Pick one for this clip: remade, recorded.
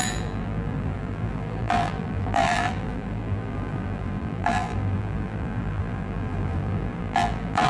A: remade